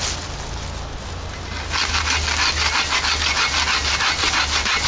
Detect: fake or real real